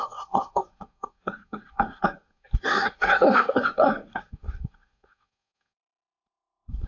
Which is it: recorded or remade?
remade